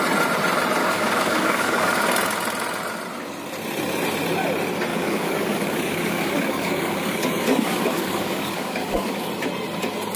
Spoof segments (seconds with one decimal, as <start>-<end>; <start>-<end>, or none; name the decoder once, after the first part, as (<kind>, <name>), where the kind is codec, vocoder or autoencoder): 0.8-2.0 (codec, DAC); 4.9-9.3